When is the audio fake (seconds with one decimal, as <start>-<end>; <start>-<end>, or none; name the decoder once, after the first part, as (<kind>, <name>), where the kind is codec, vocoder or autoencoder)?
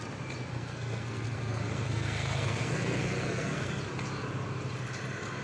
0.5-3.7 (codec, SNAC)